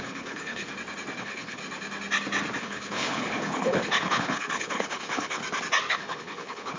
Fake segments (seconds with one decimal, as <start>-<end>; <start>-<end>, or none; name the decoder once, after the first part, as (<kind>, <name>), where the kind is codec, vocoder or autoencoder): 0.0-0.7 (codec, HILCodec); 1.2-1.6; 2.6-5.4; 5.9-6.8